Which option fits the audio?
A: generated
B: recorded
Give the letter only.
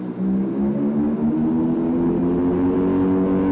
B